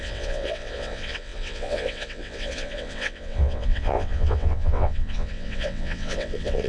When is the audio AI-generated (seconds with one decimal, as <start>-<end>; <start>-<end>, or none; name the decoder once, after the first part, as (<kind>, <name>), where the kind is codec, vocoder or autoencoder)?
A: 0.0-6.7 (vocoder, WaveNeXt)